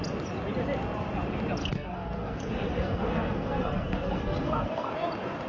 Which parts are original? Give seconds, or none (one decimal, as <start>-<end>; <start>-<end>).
0.0-1.6; 4.9-5.5